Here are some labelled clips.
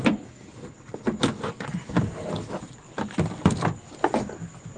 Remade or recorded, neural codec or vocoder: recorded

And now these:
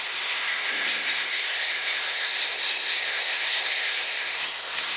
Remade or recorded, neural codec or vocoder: remade, codec, SNAC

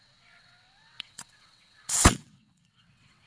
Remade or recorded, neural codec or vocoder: remade, vocoder, WaveNeXt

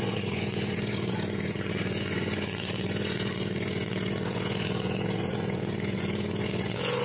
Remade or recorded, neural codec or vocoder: remade, vocoder, Vocos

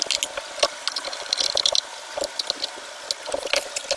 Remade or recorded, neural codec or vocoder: recorded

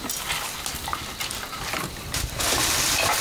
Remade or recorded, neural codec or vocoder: recorded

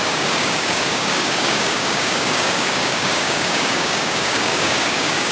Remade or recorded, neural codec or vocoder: remade, codec, DAC